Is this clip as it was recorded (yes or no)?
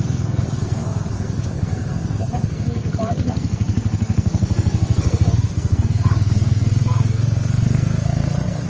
no